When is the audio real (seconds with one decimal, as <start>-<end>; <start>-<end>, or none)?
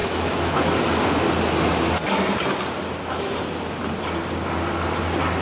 0.6-5.4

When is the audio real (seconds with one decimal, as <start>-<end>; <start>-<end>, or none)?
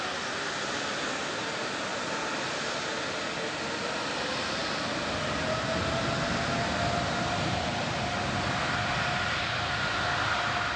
0.0-10.8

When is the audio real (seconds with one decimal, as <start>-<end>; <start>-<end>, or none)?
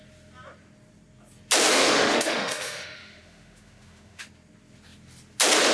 0.0-1.6; 4.2-5.7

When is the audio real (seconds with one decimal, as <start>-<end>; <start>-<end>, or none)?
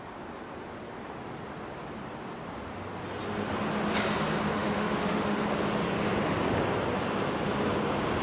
0.0-4.5; 5.4-8.2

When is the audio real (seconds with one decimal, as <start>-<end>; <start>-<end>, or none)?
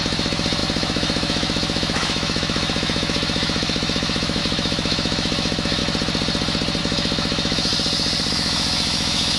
5.8-6.8; 7.7-8.3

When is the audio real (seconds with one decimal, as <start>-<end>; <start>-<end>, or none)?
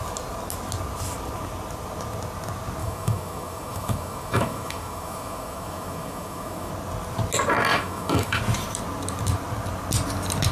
0.0-2.8; 6.7-7.7; 8.4-10.5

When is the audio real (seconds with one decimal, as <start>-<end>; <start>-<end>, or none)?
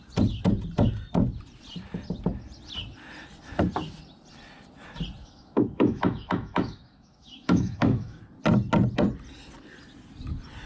0.0-5.2; 8.2-10.7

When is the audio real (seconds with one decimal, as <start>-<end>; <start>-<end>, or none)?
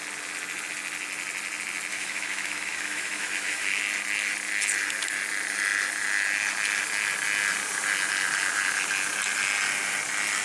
0.0-1.9; 3.8-10.4